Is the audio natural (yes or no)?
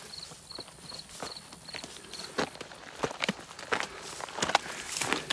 yes